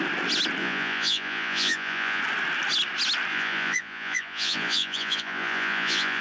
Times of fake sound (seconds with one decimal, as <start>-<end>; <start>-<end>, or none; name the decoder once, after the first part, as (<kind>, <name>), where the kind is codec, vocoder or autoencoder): 0.6-2.2 (vocoder, Vocos); 3.3-6.2